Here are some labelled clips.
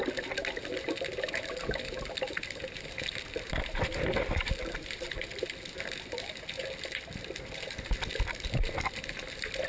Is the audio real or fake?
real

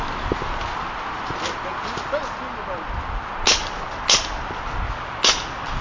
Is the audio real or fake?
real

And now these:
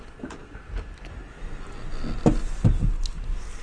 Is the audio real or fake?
real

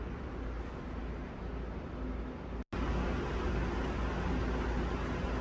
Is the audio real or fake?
real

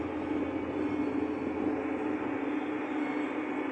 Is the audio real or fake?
real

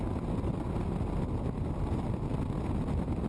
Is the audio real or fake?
real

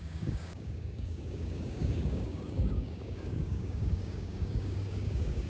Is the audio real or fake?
fake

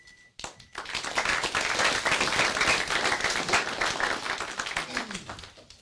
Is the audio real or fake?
real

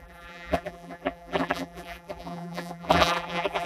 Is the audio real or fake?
fake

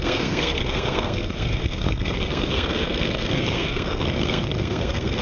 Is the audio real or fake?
fake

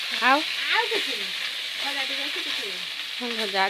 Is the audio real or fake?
real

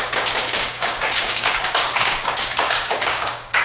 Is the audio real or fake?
fake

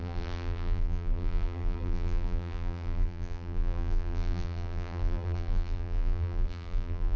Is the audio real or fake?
fake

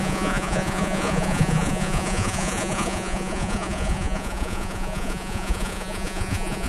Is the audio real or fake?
fake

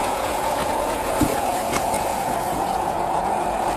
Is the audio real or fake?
fake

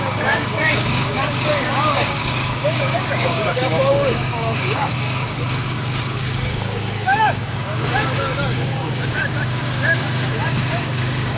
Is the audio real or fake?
fake